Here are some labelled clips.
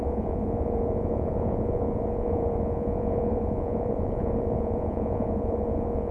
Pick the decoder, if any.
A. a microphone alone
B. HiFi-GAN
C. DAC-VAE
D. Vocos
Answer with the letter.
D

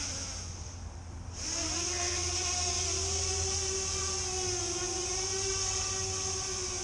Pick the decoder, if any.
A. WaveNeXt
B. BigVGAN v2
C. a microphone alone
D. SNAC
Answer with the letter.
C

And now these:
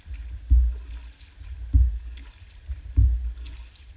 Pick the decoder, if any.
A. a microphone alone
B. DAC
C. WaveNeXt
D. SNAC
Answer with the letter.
A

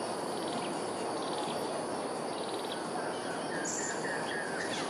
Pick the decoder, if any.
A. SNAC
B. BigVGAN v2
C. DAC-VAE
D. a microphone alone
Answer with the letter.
D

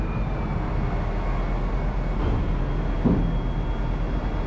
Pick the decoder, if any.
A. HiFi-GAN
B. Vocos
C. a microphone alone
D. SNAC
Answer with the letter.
C